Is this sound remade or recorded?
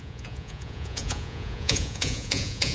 remade